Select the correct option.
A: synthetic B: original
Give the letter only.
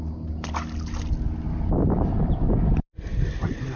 B